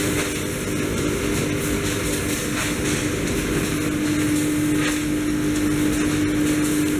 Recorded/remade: recorded